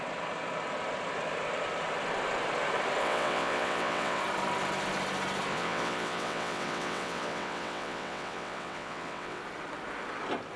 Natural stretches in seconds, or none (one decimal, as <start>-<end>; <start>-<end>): 0.0-3.0; 4.2-5.5; 9.4-10.6